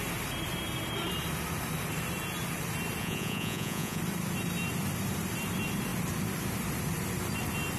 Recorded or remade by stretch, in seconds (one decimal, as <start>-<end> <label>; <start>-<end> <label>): 0.0-3.0 recorded; 3.0-4.0 remade; 4.0-7.8 recorded